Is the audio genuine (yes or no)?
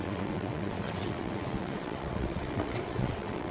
no